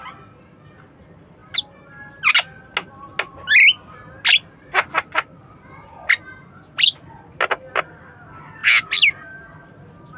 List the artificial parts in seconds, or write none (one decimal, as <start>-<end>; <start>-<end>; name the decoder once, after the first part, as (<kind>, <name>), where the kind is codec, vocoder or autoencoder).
none